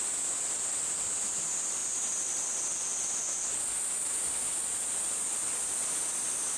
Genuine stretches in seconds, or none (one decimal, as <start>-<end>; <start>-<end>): 0.0-6.6